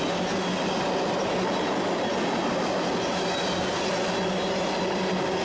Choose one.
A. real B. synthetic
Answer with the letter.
A